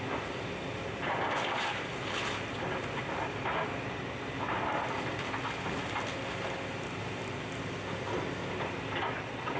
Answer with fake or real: real